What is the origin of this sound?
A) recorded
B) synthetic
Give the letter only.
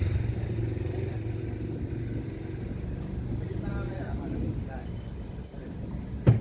A